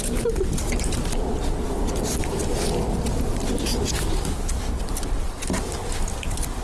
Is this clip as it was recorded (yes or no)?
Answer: yes